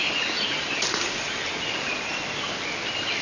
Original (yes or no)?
yes